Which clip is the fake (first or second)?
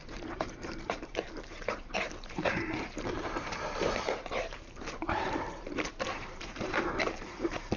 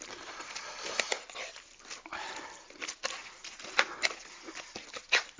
first